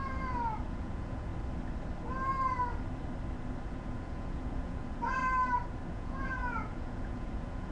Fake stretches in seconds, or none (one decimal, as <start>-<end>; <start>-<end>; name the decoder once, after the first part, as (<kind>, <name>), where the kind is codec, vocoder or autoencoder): 0.7-1.3 (vocoder, Vocos); 3.7-5.2; 5.9-7.7